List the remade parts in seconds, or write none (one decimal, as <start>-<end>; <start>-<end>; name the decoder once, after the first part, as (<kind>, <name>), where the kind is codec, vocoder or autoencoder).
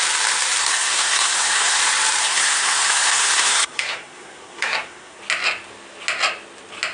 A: 0.6-1.8 (codec, SNAC); 2.2-5.2